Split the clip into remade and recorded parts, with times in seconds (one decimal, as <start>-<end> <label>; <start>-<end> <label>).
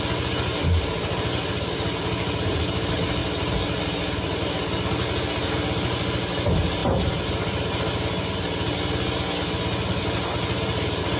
0.0-11.2 recorded